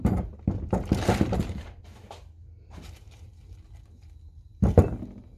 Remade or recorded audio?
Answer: recorded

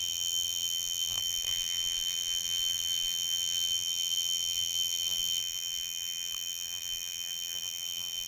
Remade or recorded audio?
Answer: remade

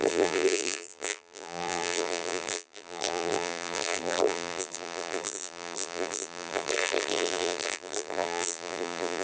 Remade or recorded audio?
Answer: remade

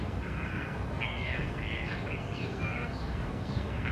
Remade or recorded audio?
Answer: remade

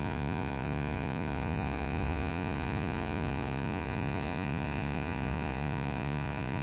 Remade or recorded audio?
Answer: remade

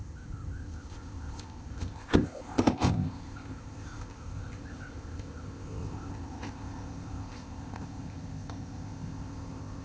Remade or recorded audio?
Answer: remade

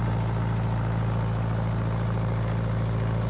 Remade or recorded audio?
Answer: recorded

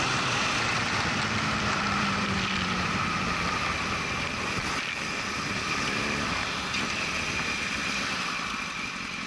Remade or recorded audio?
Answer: remade